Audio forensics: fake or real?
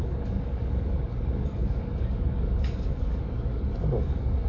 fake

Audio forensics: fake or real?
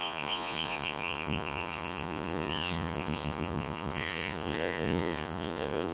fake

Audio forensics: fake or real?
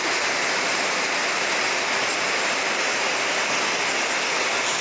real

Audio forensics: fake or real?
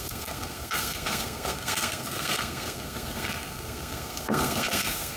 fake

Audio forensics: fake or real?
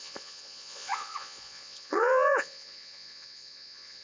fake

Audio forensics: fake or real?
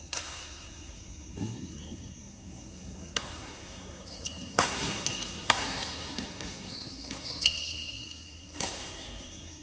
fake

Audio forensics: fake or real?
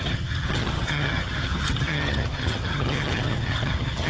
fake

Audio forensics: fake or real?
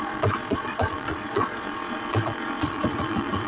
fake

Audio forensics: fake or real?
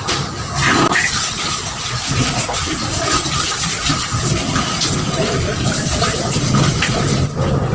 real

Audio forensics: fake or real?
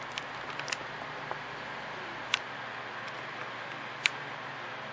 real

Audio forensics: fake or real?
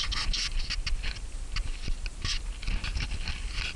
real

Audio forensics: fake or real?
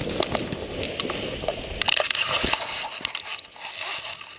real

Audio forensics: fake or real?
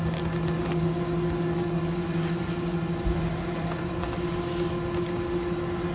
real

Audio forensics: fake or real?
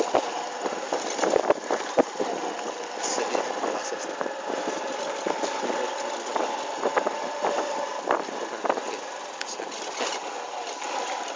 real